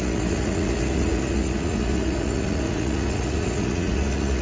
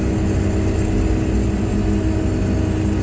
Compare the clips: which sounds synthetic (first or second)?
first